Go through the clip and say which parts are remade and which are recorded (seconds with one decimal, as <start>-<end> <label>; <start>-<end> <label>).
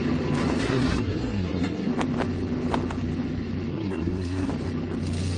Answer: 0.0-0.6 recorded; 0.6-1.9 remade; 1.9-3.7 recorded; 3.7-4.5 remade; 4.5-5.4 recorded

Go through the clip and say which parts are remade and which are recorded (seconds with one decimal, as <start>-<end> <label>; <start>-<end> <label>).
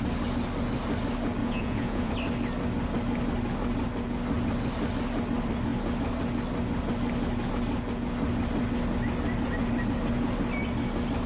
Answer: 0.0-1.4 recorded; 1.4-2.1 remade; 2.1-11.3 recorded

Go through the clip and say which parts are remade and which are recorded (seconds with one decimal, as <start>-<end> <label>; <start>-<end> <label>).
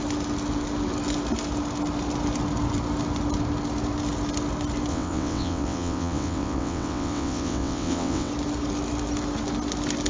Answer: 0.0-4.9 recorded; 4.9-8.3 remade; 8.3-10.1 recorded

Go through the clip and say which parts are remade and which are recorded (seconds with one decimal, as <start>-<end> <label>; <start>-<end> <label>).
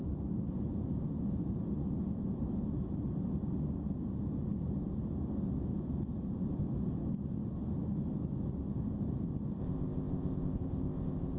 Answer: 0.0-9.6 recorded; 9.6-11.4 remade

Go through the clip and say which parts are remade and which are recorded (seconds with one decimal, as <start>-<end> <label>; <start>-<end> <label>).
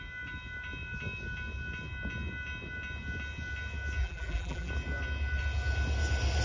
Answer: 0.0-4.0 recorded; 4.0-4.7 remade; 4.7-6.4 recorded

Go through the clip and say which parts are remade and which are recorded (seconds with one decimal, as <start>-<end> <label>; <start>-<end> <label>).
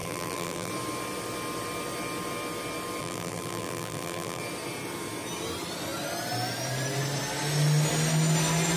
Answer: 0.0-0.7 remade; 0.7-3.0 recorded; 3.0-4.4 remade; 4.4-8.8 recorded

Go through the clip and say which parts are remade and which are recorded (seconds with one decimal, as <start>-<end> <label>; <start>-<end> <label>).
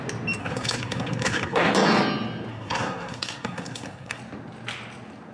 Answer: 0.0-0.4 recorded; 0.4-1.7 remade; 1.7-2.5 recorded; 2.5-4.2 remade; 4.2-5.3 recorded